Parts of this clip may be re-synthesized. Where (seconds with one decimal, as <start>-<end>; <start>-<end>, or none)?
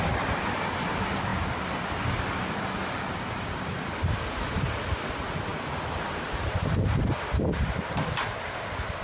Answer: none